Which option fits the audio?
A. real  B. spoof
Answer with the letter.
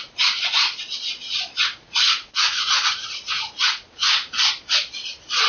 B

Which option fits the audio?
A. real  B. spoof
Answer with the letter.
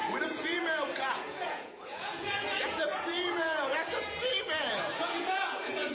B